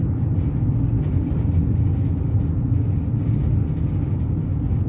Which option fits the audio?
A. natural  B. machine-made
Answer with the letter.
A